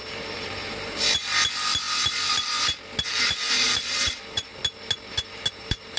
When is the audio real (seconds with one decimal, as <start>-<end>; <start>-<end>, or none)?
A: 1.2-3.0; 4.5-5.5